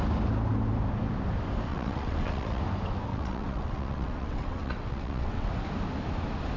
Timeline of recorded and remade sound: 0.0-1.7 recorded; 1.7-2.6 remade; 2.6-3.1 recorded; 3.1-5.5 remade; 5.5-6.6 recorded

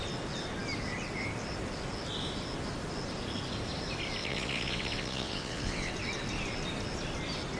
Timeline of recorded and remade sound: 0.0-4.2 recorded; 4.2-5.9 remade; 5.9-7.6 recorded

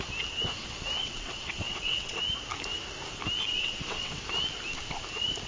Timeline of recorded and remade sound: 0.0-1.0 recorded; 1.0-2.2 remade; 2.2-3.5 recorded; 3.5-4.2 remade; 4.2-5.5 recorded

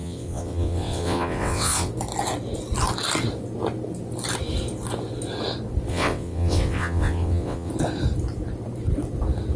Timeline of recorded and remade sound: 0.0-1.9 remade; 1.9-5.9 recorded; 5.9-7.7 remade; 7.7-9.6 recorded